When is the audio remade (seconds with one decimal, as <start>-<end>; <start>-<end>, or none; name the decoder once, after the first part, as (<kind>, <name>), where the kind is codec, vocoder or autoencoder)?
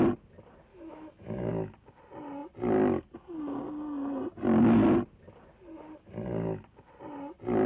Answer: 0.7-1.5 (autoencoder, DAC-VAE)